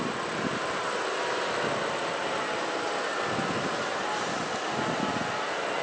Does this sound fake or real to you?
real